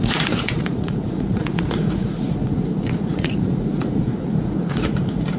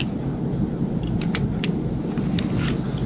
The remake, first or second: first